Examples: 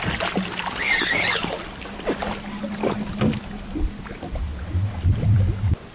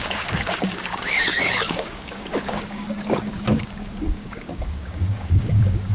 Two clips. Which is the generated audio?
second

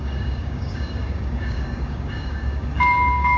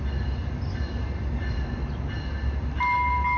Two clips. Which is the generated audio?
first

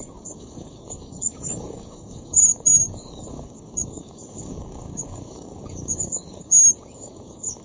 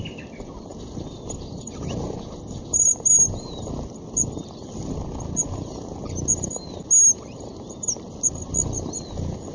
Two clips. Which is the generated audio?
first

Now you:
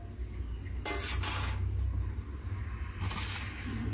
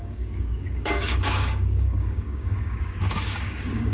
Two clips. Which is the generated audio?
second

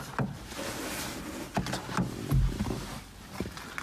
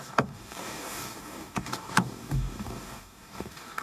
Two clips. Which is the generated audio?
second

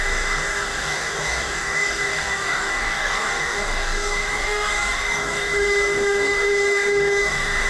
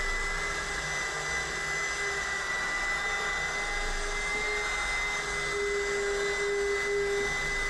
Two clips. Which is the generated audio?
first